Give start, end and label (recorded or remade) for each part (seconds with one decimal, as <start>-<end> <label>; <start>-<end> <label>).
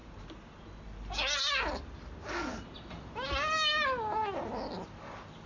0.0-5.5 recorded